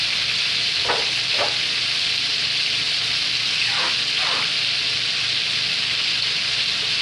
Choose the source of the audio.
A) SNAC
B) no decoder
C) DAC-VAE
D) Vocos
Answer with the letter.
B